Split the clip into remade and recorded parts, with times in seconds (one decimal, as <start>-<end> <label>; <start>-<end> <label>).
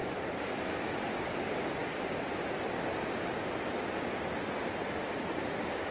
0.0-1.0 remade; 1.0-5.9 recorded